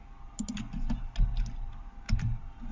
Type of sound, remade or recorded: recorded